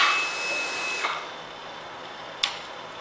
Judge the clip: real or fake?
real